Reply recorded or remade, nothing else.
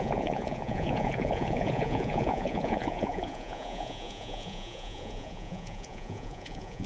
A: remade